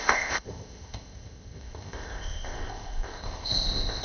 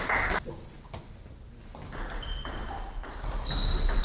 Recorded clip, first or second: second